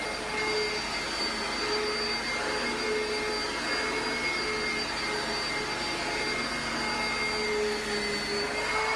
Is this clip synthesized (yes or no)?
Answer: no